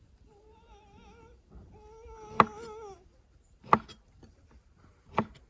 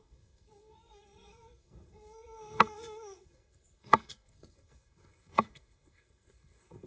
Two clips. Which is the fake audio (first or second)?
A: second